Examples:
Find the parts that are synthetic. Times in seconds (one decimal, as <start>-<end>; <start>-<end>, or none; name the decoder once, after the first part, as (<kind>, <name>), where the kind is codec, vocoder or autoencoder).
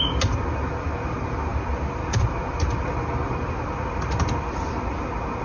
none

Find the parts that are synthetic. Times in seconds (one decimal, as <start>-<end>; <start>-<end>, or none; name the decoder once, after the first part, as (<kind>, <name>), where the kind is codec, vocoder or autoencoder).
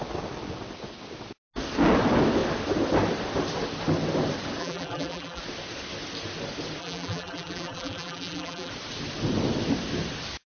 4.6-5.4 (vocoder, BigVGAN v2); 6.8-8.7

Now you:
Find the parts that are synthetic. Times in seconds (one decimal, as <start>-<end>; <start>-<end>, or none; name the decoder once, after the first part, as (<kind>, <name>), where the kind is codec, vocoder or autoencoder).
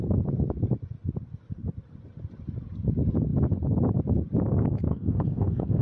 4.9-5.8 (codec, DAC)